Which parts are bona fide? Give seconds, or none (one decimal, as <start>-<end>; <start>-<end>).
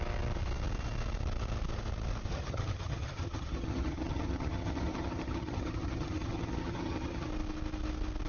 0.0-2.3; 7.3-8.3